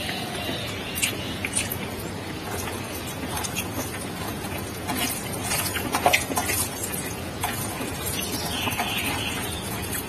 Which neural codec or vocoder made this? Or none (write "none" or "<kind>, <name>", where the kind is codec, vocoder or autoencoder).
vocoder, Vocos